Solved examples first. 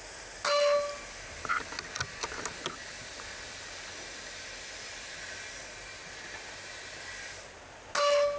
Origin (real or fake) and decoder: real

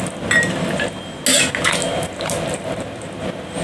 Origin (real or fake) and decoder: real